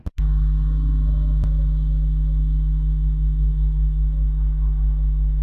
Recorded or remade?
recorded